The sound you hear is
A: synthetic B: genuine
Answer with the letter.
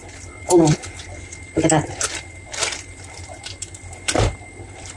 A